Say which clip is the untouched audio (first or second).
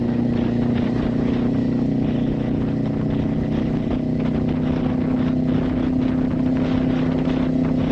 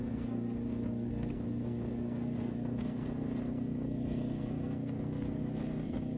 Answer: first